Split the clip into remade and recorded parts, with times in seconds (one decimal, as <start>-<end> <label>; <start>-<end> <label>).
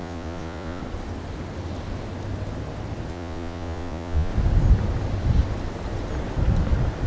0.0-0.8 remade; 0.8-3.1 recorded; 3.1-4.3 remade; 4.3-7.1 recorded